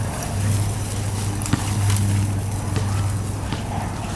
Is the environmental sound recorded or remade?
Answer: recorded